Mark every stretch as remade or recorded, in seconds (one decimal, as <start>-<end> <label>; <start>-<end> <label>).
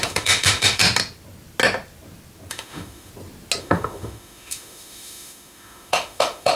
0.0-0.8 remade; 0.8-2.5 recorded; 2.5-3.1 remade; 3.1-3.6 recorded; 3.6-6.6 remade